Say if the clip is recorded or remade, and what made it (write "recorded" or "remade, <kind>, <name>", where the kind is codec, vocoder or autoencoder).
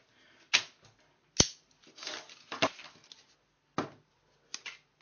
recorded